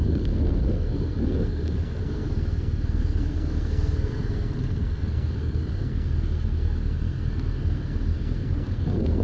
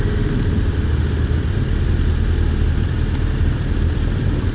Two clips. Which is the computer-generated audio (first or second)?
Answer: first